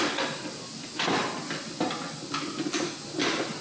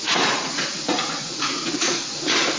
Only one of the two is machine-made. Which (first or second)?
second